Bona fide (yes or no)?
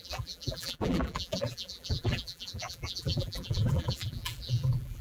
no